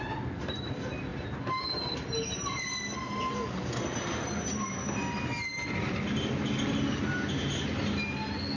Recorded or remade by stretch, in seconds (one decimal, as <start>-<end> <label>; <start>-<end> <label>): 0.0-8.6 recorded